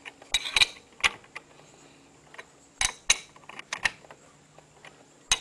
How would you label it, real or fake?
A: real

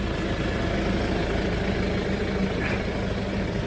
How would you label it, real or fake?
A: real